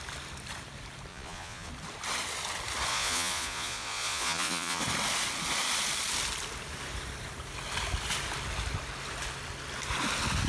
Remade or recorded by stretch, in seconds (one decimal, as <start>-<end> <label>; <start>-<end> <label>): 0.0-1.1 recorded; 1.1-1.7 remade; 1.7-2.9 recorded; 2.9-4.8 remade; 4.8-10.5 recorded